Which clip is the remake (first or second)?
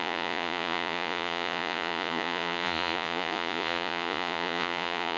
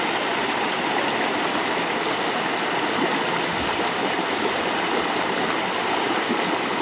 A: first